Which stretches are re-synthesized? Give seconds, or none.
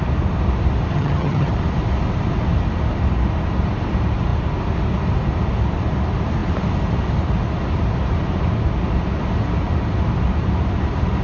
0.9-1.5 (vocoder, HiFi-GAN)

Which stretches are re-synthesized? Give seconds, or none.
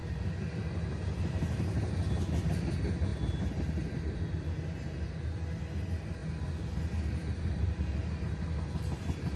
0.0-1.8 (vocoder, BigVGAN v2); 6.2-8.2